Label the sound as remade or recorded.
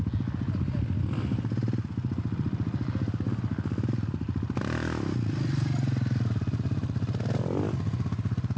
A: recorded